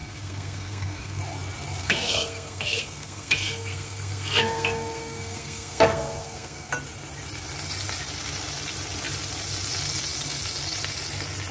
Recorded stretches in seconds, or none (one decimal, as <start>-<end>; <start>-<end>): 1.2-1.8; 6.7-11.5